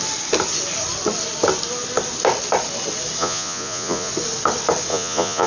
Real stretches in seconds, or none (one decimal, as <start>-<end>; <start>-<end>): 0.0-3.2; 4.1-4.9